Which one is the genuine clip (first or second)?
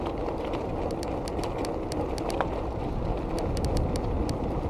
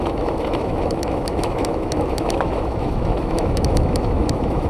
first